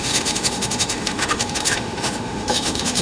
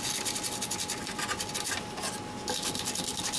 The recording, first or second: second